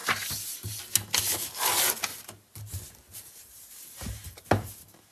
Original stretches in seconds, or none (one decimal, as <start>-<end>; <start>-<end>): 0.8-2.1; 4.5-5.1